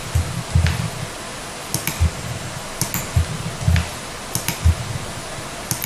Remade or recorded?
recorded